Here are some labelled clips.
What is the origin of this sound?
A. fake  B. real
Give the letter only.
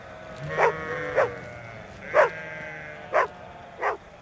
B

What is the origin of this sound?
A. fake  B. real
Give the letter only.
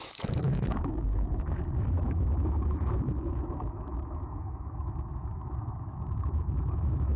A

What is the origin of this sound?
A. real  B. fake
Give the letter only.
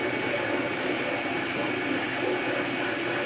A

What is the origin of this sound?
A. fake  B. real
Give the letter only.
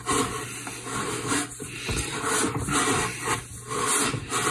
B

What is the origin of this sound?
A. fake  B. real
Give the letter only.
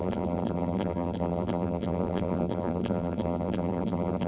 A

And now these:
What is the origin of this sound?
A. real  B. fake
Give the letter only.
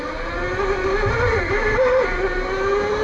A